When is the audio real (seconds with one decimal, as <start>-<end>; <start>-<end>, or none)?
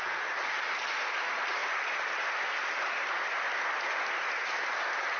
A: 0.0-5.2